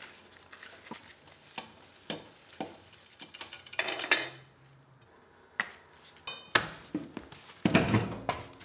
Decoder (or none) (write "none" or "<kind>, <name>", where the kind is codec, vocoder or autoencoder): none